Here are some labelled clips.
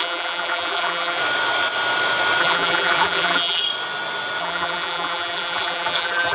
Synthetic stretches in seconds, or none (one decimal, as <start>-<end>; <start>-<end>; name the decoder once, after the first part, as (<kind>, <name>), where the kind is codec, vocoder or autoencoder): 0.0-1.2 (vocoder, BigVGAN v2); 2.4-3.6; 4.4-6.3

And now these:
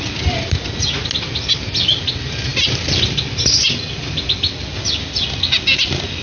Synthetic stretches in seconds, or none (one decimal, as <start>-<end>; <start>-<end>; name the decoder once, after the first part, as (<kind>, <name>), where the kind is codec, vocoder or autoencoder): none

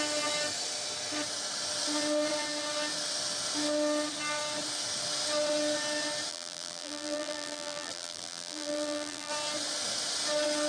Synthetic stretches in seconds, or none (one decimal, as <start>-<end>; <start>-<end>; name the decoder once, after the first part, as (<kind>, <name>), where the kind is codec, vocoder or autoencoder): 6.3-9.3 (vocoder, BigVGAN v2)

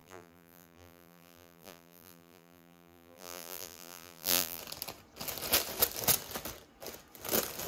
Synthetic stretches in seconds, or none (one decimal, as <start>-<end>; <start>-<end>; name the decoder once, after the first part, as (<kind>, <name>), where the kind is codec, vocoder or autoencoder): 0.0-4.6 (vocoder, BigVGAN v2)

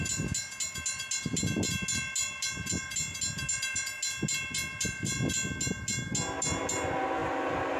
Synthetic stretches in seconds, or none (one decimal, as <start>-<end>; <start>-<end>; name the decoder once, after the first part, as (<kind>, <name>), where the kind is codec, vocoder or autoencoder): none